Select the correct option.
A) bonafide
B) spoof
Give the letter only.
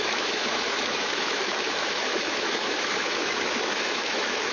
B